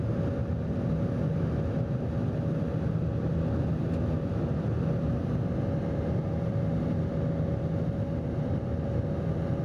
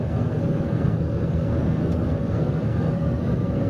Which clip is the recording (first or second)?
first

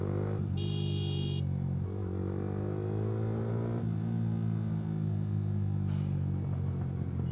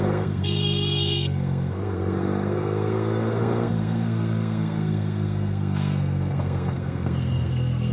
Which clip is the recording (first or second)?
first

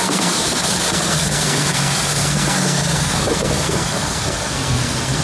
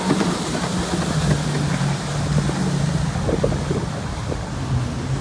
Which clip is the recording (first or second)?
second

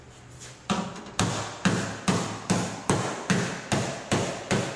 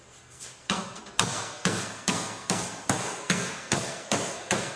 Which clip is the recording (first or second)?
first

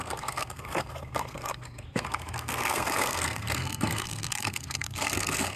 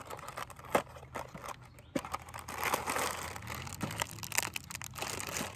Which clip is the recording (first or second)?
second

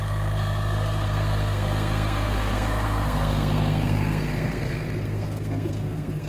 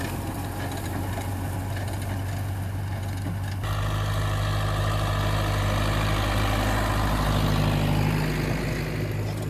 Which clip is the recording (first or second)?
second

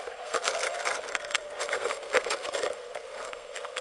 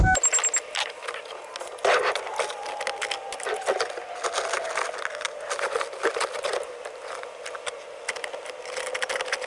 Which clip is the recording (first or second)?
second